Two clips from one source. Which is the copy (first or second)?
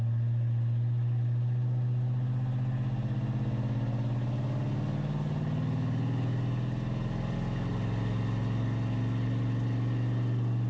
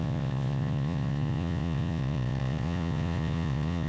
second